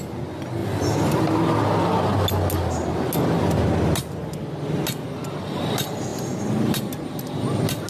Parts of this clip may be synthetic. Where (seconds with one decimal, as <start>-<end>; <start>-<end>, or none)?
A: 0.6-1.4; 6.1-6.8